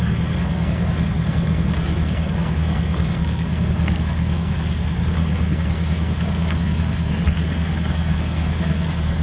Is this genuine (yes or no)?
no